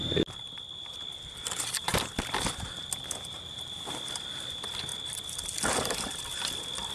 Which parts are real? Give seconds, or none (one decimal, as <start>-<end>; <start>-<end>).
0.0-6.9